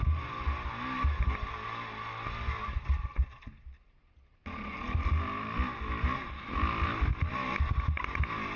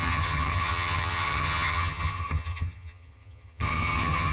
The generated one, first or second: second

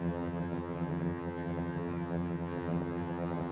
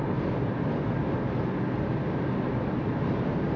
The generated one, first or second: first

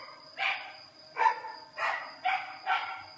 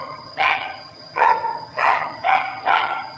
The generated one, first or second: second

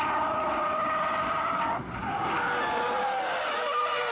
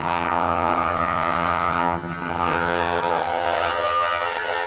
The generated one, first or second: second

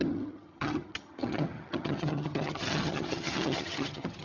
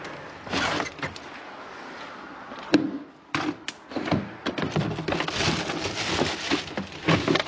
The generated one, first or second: first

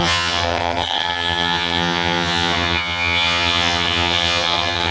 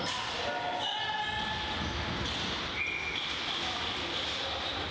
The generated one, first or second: first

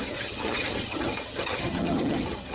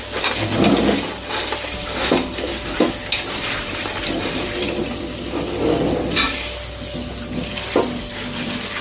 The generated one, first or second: first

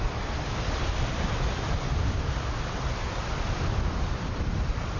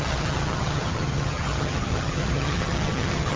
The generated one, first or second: second